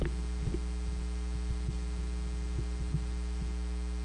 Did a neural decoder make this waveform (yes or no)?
no